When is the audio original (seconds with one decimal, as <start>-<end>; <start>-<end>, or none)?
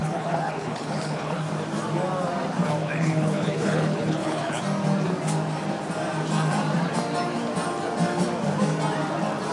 1.4-2.8; 4.6-9.5